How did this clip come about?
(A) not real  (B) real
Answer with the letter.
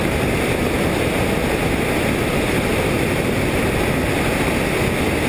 B